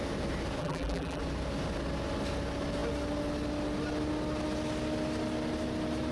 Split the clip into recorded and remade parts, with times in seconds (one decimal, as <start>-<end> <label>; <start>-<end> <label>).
0.0-0.6 recorded; 0.6-1.2 remade; 1.2-6.1 recorded